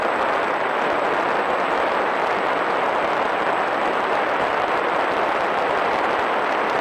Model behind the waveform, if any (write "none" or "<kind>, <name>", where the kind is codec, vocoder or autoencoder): none